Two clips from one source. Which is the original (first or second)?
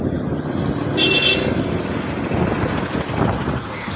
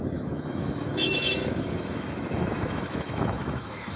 first